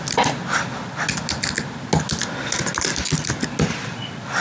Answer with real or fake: real